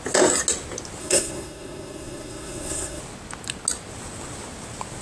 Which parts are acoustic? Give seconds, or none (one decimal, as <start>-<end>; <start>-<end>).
0.0-1.0; 3.0-5.0